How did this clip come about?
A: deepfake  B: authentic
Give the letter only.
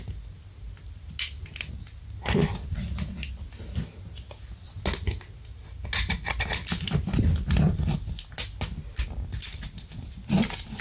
B